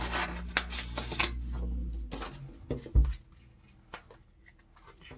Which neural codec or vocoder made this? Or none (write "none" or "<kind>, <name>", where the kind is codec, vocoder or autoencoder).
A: none